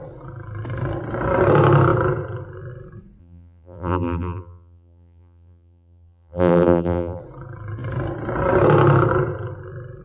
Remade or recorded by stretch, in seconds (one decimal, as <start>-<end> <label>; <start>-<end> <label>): 0.0-3.2 recorded; 3.2-7.2 remade; 7.2-10.0 recorded

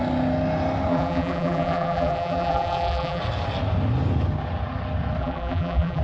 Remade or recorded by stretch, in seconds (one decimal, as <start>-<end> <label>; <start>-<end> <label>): 0.0-0.9 recorded; 0.9-3.2 remade; 3.2-5.2 recorded; 5.2-6.0 remade

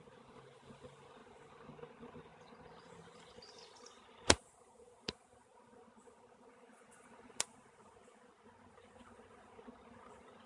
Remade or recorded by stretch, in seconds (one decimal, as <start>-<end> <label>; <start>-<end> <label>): 0.0-1.2 remade; 1.2-1.9 recorded; 1.9-5.8 remade; 5.8-7.4 recorded; 7.4-10.5 remade

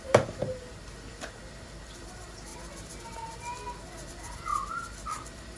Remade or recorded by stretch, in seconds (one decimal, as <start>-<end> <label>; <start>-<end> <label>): 0.0-2.5 remade; 2.5-4.1 recorded; 4.1-5.6 remade

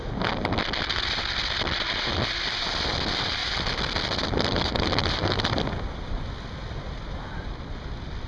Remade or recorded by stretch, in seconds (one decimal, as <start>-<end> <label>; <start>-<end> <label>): 0.0-3.4 recorded; 3.4-8.3 remade

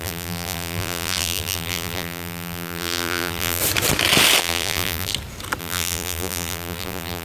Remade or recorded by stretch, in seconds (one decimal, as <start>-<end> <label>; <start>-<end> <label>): 0.0-3.6 remade; 3.6-4.4 recorded; 4.4-5.1 remade; 5.1-5.6 recorded; 5.6-7.2 remade

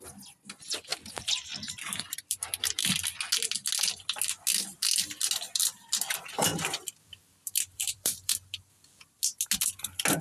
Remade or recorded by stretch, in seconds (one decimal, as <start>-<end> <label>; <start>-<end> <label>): 0.0-0.9 recorded; 0.9-2.9 remade; 2.9-6.5 recorded; 6.5-9.2 remade; 9.2-10.2 recorded